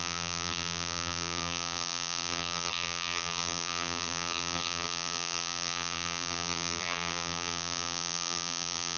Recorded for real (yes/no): no